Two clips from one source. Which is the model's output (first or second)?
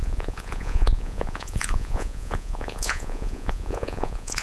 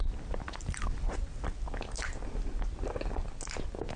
first